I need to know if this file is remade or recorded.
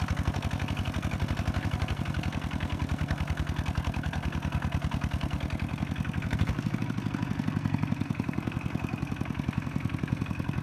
remade